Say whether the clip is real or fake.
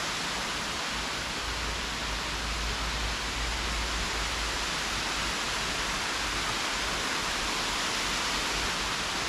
real